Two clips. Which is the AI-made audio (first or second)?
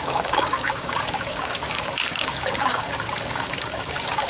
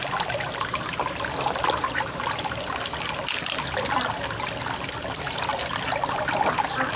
first